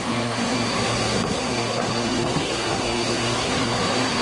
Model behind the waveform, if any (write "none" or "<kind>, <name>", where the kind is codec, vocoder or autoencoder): codec, SNAC